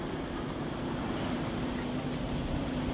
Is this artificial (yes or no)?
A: no